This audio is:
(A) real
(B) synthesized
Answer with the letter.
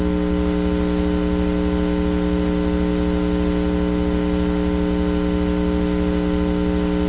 A